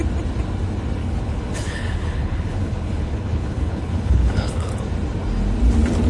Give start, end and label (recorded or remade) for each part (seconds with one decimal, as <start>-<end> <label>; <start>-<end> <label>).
0.0-1.0 recorded; 1.0-4.7 remade; 4.7-6.1 recorded